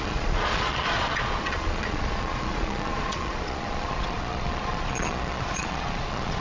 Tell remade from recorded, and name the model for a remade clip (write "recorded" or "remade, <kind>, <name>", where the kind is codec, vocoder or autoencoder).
remade, vocoder, Vocos